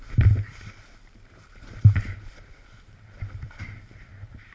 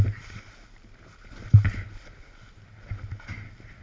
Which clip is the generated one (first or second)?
first